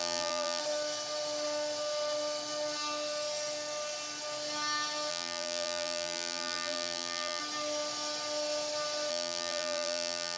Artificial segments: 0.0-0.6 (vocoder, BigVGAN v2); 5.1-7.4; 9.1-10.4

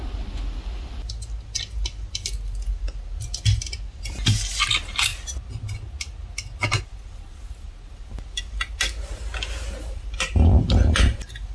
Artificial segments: none